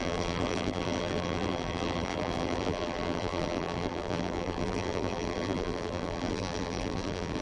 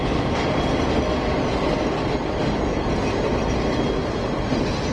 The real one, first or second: second